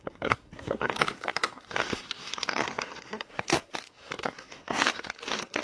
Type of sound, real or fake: fake